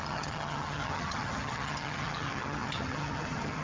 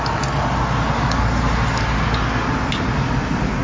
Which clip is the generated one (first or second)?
first